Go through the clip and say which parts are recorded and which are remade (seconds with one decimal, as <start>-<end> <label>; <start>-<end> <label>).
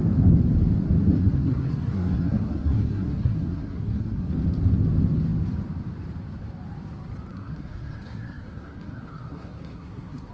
0.0-1.2 recorded; 1.2-4.3 remade; 4.3-7.3 recorded; 7.3-10.3 remade